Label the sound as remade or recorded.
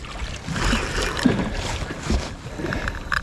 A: recorded